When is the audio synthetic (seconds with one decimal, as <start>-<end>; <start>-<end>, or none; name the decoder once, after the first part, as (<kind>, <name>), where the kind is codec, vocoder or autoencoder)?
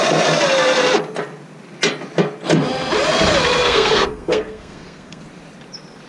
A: 3.6-5.2 (codec, SNAC)